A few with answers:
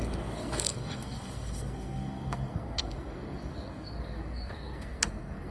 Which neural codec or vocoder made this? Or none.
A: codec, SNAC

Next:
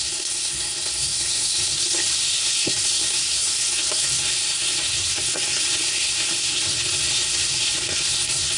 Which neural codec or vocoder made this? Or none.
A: codec, SNAC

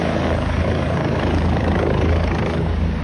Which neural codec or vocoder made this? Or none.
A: codec, DAC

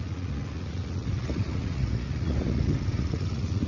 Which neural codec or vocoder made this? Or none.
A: vocoder, Vocos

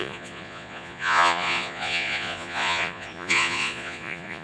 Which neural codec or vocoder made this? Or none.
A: vocoder, Vocos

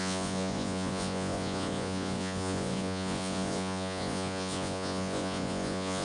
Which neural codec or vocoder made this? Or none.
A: vocoder, Vocos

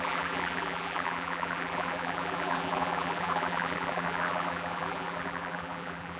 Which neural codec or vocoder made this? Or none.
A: vocoder, BigVGAN v2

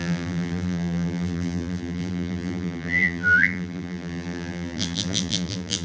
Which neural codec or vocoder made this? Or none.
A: vocoder, BigVGAN v2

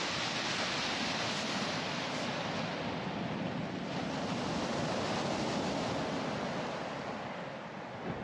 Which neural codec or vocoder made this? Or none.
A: none